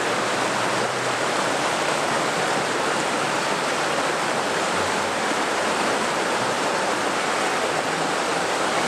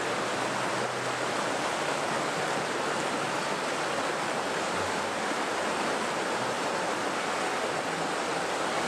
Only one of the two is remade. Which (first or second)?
first